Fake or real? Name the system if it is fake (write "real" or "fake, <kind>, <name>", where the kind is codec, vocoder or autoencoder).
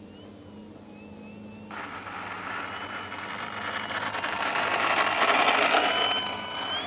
real